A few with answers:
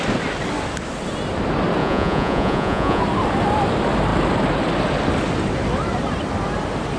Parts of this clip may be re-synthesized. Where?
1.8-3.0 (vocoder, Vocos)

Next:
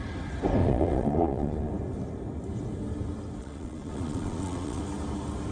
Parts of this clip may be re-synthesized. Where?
0.6-1.7 (vocoder, Vocos); 3.4-4.8

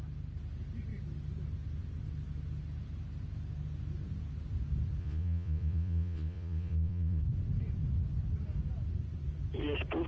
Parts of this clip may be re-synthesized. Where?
5.0-7.2 (vocoder, Vocos)

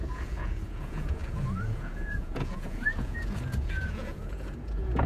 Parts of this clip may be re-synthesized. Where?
0.0-5.1 (vocoder, Vocos)

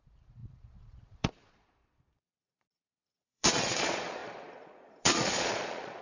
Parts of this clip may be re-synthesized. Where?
0.0-6.0 (vocoder, Vocos)

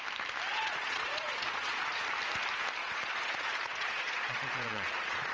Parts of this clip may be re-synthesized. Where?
0.5-2.0 (vocoder, Vocos); 2.8-5.3